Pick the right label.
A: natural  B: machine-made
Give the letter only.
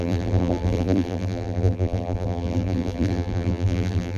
B